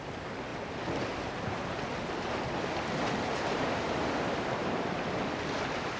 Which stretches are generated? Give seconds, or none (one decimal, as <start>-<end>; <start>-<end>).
none